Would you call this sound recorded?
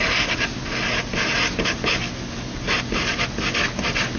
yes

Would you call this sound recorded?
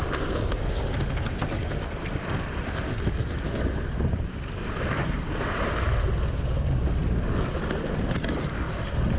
yes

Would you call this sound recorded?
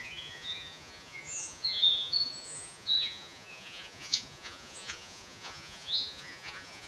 no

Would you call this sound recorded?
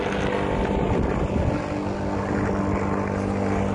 yes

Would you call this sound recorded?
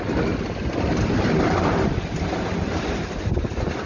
yes